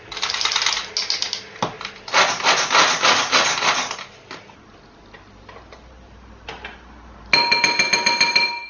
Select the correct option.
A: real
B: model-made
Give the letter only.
A